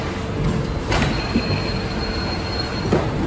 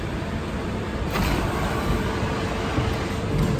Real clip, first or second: first